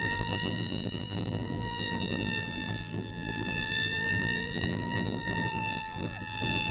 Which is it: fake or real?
fake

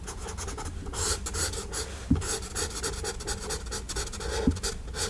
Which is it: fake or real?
real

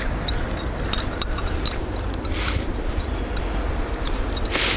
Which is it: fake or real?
fake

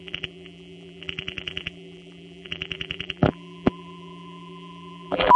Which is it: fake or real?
fake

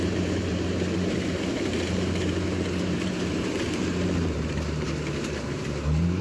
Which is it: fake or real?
fake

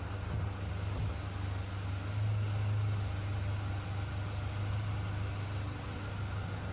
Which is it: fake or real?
real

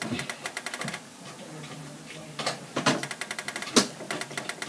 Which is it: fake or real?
real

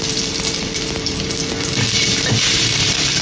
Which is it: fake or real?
fake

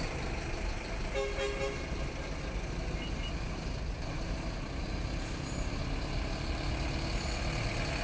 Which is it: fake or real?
real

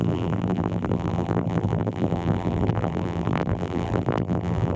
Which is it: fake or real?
fake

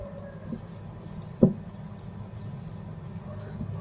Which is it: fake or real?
real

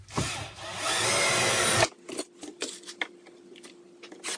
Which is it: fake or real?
real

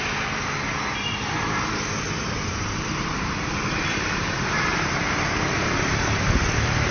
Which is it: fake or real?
fake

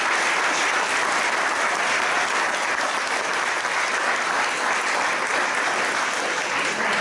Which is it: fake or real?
real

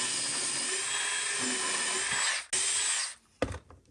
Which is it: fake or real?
real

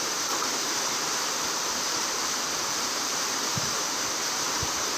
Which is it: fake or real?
fake